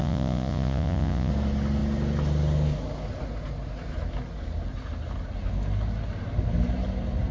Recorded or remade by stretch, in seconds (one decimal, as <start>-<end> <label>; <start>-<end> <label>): 0.0-1.3 remade; 1.3-7.3 recorded